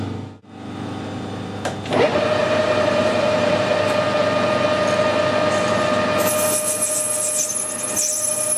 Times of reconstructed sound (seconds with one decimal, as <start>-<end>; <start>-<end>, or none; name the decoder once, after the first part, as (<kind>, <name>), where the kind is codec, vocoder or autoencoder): 2.4-3.7 (vocoder, BigVGAN v2)